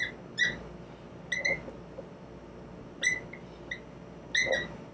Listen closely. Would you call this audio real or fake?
real